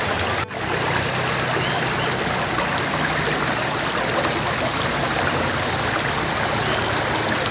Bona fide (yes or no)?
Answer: yes